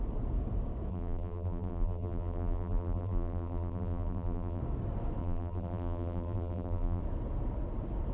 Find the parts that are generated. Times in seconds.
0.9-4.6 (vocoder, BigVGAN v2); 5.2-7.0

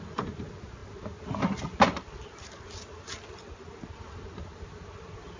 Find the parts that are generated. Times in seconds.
none

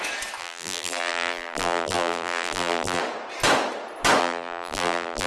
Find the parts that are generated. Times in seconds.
0.4-3.0 (vocoder, BigVGAN v2); 4.2-5.3

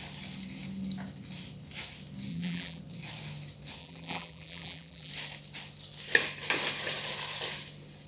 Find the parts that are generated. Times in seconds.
2.3-2.8 (vocoder, BigVGAN v2); 3.8-5.1